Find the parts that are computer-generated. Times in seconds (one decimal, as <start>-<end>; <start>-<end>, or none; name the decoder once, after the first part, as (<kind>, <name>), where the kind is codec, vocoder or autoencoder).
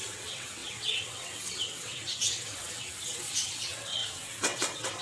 0.0-5.0 (vocoder, WaveNeXt)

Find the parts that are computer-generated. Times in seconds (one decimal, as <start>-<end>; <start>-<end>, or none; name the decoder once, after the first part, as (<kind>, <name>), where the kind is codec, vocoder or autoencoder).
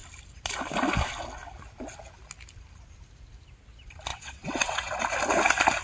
4.1-5.0 (vocoder, WaveNeXt)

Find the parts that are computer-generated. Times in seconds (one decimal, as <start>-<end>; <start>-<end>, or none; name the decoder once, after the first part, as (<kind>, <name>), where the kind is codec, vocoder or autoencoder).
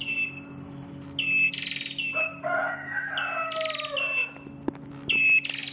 2.2-3.1 (codec, DAC)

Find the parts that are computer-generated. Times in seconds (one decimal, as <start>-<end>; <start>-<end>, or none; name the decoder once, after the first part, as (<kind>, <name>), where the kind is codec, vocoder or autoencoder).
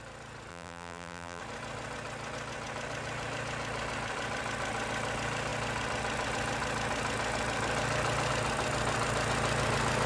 0.5-1.4 (vocoder, BigVGAN v2)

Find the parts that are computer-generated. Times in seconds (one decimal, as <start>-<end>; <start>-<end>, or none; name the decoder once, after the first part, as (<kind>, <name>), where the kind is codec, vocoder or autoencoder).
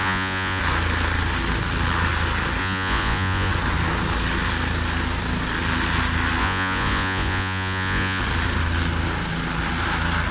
0.0-0.6 (vocoder, Vocos); 2.6-3.5; 6.4-8.2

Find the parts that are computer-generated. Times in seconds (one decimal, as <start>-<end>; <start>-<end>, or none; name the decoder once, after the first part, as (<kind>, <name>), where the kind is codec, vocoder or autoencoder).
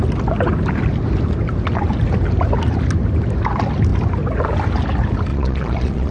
5.3-6.1 (vocoder, Vocos)